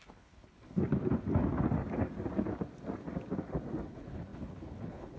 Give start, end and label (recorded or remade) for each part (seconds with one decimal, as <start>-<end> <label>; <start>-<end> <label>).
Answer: 0.0-0.8 remade; 0.8-3.9 recorded; 3.9-5.2 remade